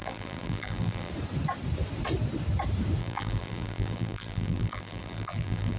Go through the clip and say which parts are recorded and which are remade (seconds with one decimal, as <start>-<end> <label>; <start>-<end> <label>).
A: 0.0-1.1 remade; 1.1-3.0 recorded; 3.0-5.8 remade